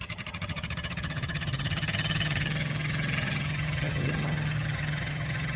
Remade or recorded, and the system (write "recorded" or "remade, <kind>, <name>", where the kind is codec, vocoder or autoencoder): remade, vocoder, HiFi-GAN